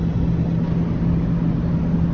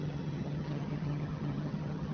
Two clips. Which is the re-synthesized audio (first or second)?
second